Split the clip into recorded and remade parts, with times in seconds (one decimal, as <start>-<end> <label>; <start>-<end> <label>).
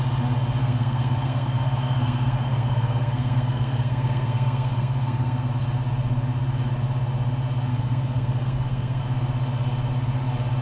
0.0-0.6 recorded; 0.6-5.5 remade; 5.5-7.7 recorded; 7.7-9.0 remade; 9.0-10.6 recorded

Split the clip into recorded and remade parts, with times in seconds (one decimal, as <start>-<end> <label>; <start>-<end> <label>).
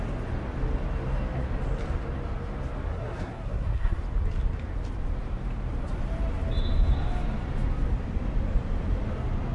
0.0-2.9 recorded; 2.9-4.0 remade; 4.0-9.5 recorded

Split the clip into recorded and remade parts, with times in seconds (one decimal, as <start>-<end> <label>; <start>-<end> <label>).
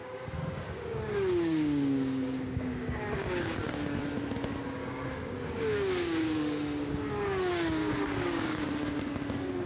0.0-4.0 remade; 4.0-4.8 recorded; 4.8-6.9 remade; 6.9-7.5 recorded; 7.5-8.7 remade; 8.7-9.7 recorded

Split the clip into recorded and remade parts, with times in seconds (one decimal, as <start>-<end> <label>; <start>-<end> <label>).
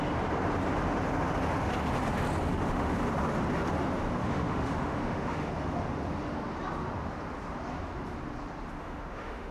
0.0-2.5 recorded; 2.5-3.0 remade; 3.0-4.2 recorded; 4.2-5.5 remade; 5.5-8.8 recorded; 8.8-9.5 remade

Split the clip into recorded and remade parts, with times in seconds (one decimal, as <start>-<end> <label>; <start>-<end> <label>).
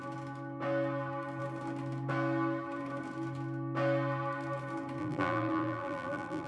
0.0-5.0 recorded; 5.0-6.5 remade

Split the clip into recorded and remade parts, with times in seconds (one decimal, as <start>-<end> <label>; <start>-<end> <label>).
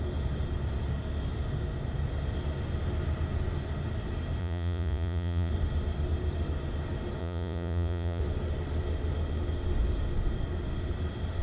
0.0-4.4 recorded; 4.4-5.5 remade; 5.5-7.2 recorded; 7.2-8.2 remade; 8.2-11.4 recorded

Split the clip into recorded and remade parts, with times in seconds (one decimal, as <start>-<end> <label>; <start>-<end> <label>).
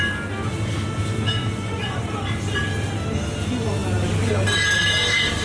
0.0-1.4 recorded; 1.4-2.0 remade; 2.0-5.4 recorded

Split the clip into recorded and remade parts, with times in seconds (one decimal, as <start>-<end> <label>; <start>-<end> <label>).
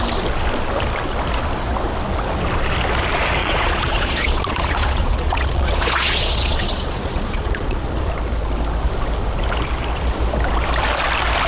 0.0-3.4 recorded; 3.4-7.8 remade; 7.8-11.5 recorded